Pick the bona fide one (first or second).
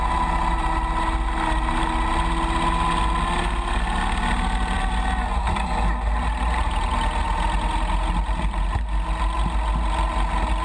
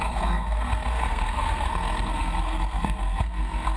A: first